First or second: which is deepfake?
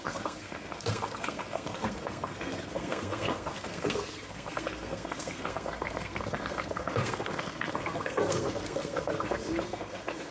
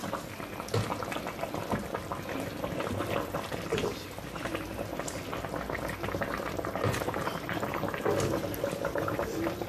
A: first